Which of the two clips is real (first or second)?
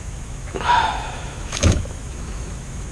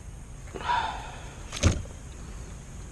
second